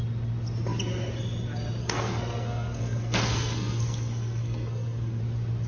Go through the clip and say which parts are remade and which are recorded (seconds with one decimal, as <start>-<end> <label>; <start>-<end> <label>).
0.0-1.8 recorded; 1.8-5.2 remade; 5.2-5.7 recorded